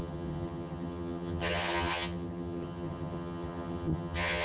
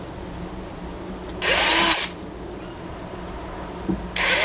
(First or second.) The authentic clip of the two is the second